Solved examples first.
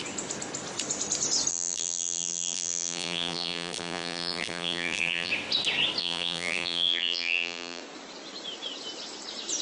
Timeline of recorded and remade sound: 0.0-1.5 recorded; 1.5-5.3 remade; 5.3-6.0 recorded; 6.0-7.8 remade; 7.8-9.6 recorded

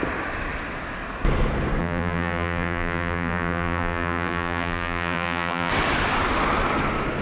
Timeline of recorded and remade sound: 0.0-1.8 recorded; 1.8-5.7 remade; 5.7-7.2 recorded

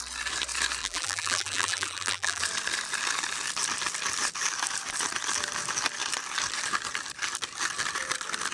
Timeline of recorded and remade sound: 0.0-0.8 recorded; 0.8-2.4 remade; 2.4-8.5 recorded

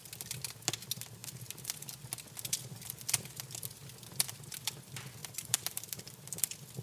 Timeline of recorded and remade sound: 0.0-5.2 recorded; 5.2-6.0 remade; 6.0-6.8 recorded

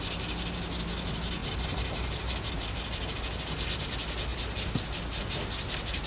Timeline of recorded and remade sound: 0.0-6.1 recorded